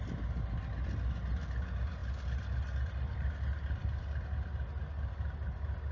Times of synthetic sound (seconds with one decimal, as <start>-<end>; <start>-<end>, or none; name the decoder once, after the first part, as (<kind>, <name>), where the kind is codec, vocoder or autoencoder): none